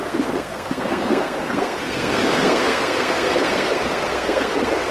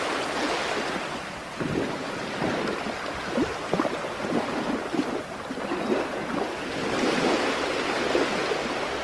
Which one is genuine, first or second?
second